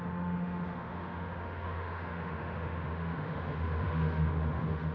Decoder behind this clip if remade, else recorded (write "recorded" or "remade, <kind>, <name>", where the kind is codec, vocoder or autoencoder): remade, autoencoder, DAC-VAE